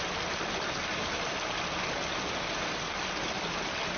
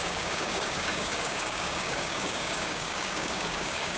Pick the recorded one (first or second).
first